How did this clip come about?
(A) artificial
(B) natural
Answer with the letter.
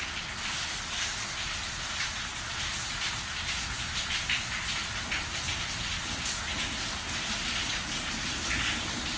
B